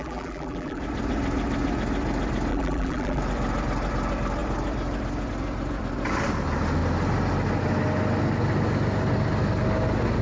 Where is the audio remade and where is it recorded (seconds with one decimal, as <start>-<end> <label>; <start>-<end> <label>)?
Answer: 0.0-0.8 remade; 0.8-2.5 recorded; 2.5-3.2 remade; 3.2-10.2 recorded